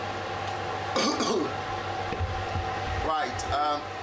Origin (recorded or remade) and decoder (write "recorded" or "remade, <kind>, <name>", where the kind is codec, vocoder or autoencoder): recorded